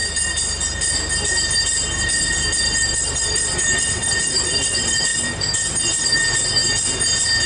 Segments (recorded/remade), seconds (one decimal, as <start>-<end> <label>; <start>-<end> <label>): 0.0-2.6 recorded; 2.6-6.6 remade; 6.6-7.5 recorded